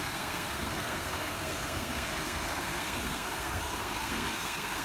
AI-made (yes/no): yes